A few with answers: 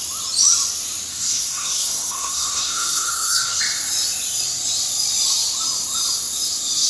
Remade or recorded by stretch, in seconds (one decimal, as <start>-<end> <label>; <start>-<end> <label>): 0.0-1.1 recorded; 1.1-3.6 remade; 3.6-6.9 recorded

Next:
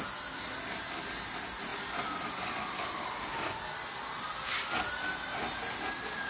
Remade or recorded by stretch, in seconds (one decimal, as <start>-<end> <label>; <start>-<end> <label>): 0.0-6.3 recorded

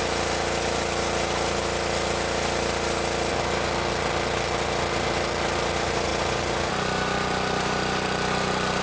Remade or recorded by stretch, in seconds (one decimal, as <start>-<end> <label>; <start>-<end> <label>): 0.0-8.8 recorded